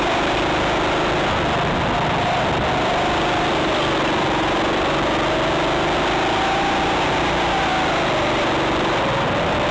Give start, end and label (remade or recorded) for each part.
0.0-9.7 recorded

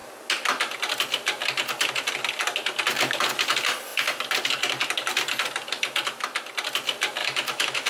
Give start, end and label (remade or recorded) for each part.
0.0-7.2 recorded; 7.2-7.9 remade

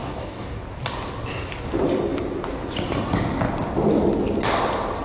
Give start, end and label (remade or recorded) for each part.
0.0-0.6 remade; 0.6-5.0 recorded

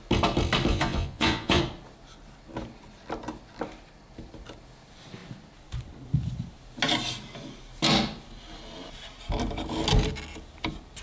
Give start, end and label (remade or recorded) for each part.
0.0-0.7 recorded; 0.7-1.6 remade; 1.6-11.0 recorded

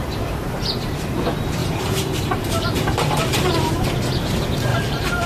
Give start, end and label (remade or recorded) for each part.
0.0-1.6 recorded; 1.6-3.9 remade; 3.9-4.7 recorded; 4.7-5.3 remade

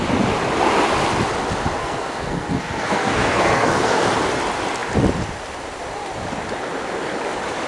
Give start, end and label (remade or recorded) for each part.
0.0-1.8 recorded; 1.8-4.0 remade; 4.0-7.7 recorded

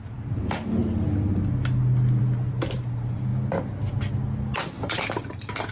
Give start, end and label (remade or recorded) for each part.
0.0-0.8 remade; 0.8-2.2 recorded; 2.2-3.3 remade; 3.3-4.9 recorded; 4.9-5.7 remade